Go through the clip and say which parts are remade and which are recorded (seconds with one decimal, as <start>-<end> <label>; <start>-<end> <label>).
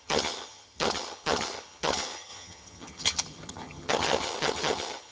0.0-5.1 remade